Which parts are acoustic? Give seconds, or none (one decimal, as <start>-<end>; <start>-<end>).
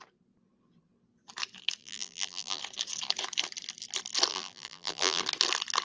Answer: 0.0-1.8; 2.6-4.3; 5.2-5.8